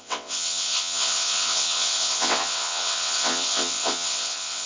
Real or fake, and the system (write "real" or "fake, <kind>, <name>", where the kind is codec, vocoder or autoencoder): fake, vocoder, WaveNeXt